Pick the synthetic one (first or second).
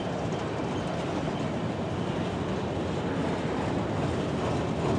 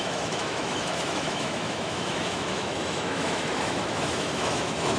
second